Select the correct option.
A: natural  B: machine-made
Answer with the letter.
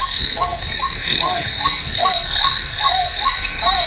B